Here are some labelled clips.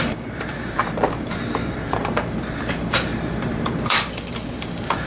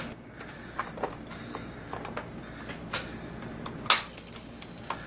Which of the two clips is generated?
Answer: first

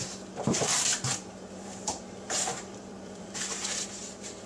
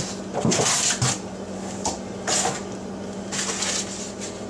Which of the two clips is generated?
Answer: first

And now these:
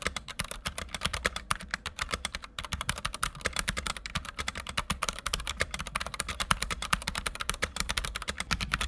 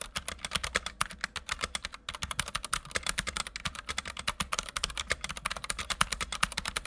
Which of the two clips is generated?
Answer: first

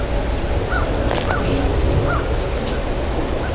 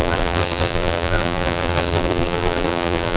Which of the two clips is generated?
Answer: second